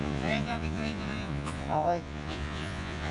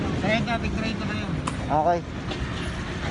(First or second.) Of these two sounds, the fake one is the first